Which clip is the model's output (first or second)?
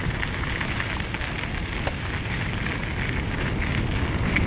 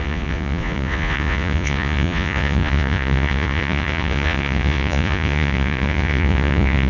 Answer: second